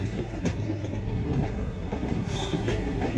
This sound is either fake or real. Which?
fake